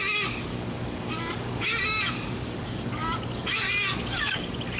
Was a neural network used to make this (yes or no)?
yes